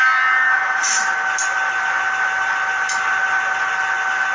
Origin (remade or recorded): recorded